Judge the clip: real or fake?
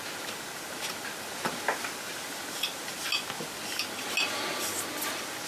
real